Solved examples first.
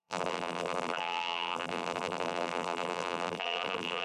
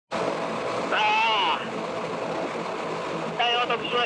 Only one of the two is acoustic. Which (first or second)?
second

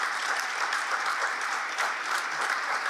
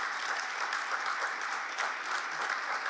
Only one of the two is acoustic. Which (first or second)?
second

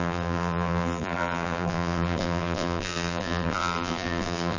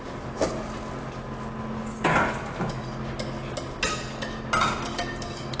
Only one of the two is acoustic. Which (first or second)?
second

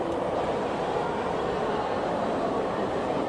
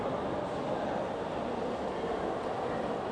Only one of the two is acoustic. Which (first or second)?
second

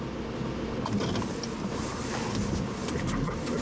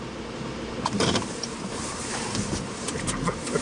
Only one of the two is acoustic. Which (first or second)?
first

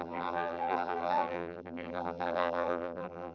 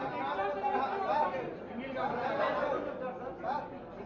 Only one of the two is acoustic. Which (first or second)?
second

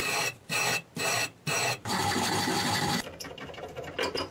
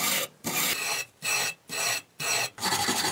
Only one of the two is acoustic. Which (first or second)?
second